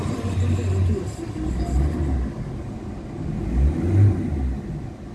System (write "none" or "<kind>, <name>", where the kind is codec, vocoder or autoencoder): none